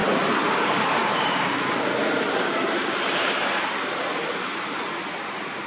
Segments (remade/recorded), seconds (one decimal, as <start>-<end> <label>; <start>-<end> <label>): 0.0-0.6 recorded; 0.6-5.7 remade